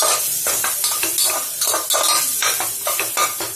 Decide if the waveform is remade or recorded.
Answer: recorded